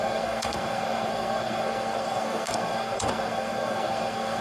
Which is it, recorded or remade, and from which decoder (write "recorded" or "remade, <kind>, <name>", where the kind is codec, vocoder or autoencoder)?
remade, codec, SNAC